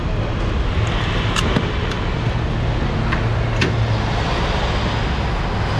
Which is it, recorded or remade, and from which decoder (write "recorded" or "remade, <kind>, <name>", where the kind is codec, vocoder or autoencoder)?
recorded